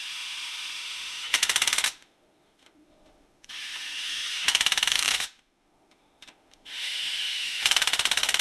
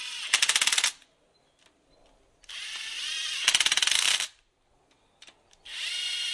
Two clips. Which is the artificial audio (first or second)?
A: first